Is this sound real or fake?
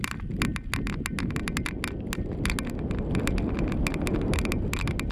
real